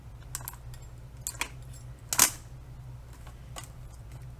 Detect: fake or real real